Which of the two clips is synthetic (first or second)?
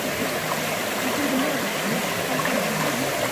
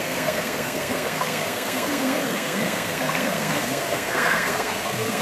second